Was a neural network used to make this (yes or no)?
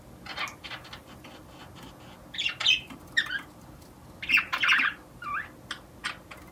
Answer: no